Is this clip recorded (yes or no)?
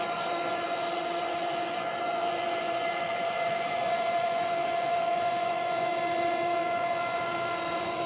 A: no